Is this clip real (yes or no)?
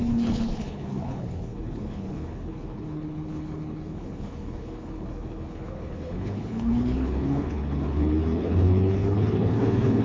no